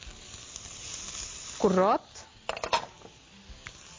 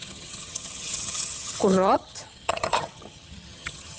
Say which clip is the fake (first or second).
second